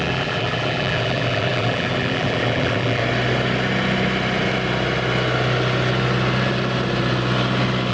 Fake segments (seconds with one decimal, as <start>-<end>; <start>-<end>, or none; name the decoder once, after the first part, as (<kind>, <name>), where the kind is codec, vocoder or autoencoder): 0.0-3.0 (vocoder, BigVGAN v2)